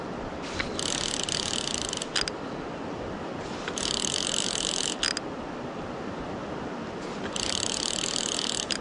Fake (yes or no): no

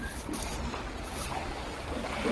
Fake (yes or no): no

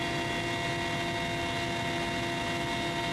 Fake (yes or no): no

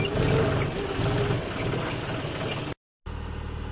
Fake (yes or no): no